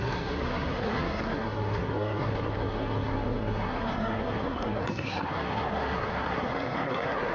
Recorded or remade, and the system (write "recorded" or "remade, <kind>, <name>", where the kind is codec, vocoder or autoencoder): remade, codec, SNAC